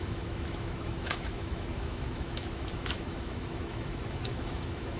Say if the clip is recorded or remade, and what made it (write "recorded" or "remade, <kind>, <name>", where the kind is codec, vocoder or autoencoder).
remade, autoencoder, DAC-VAE